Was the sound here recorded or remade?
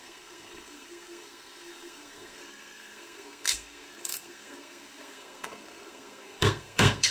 remade